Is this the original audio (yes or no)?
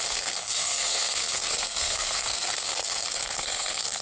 no